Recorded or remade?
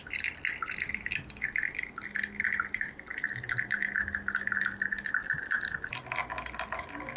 recorded